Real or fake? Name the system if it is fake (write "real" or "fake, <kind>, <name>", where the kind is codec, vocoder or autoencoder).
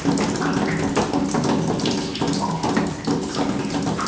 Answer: real